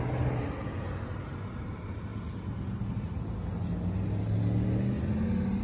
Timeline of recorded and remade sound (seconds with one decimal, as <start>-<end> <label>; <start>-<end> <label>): 0.0-5.6 recorded